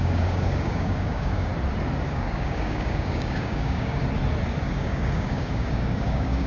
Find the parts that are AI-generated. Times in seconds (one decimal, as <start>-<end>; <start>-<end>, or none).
0.0-1.5; 2.1-4.0; 4.6-6.5